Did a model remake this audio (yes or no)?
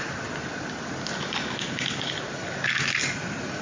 no